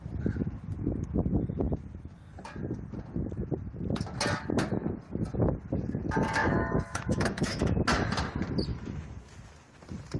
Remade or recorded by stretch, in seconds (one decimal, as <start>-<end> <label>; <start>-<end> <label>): 0.0-6.4 recorded; 6.4-7.6 remade; 7.6-8.7 recorded; 8.7-9.2 remade; 9.2-10.2 recorded